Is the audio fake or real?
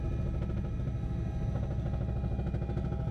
real